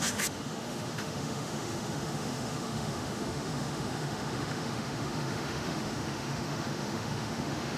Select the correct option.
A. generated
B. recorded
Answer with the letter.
A